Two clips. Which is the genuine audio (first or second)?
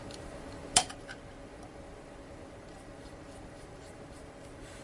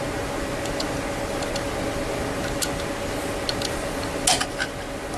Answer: second